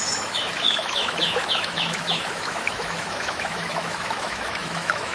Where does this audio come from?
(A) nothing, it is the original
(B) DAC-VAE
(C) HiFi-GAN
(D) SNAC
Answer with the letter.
B